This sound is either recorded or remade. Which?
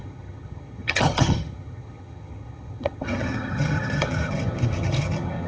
remade